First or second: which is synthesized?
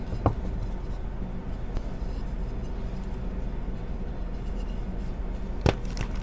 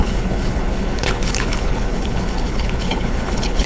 second